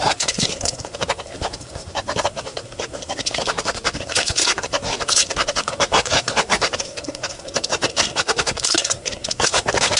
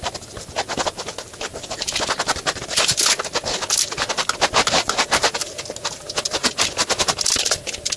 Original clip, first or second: second